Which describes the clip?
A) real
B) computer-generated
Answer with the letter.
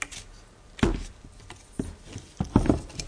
A